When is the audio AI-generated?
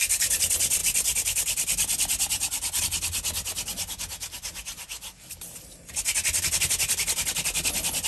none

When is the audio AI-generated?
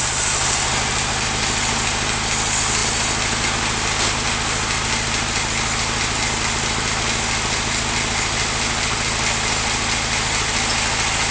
none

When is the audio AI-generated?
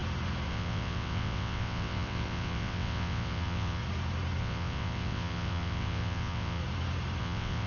0.5-3.8 (vocoder, WaveNeXt); 4.4-6.6; 7.2-7.7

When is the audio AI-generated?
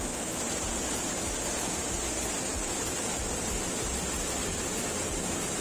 2.5-3.0 (vocoder, BigVGAN v2)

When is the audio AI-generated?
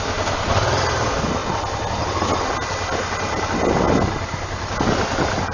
none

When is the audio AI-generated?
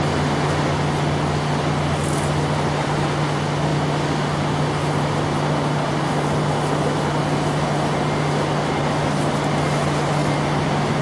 none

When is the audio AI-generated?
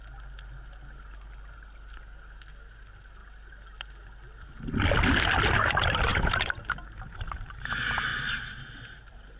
6.1-7.2 (vocoder, BigVGAN v2); 8.1-9.4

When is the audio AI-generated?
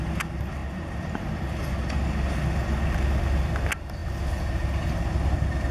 none